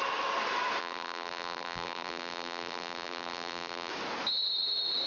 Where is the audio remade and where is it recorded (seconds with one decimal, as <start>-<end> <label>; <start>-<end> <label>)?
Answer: 0.0-0.8 recorded; 0.8-3.9 remade; 3.9-5.1 recorded